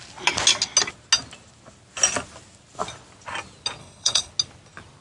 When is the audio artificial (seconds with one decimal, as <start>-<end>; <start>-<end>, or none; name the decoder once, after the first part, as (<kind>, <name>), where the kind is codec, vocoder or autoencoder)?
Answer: 3.8-4.3 (codec, HILCodec)